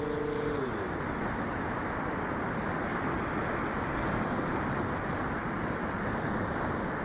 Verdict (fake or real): real